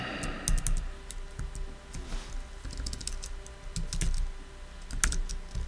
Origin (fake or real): real